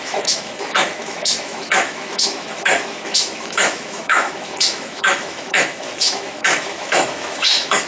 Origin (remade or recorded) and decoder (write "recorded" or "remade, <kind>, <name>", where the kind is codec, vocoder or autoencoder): remade, autoencoder, DAC-VAE